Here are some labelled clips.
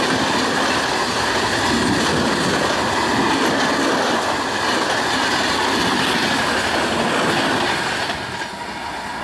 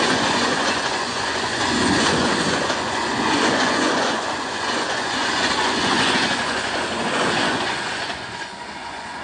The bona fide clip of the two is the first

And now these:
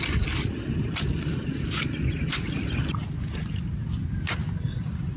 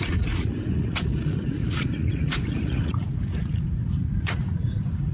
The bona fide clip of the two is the first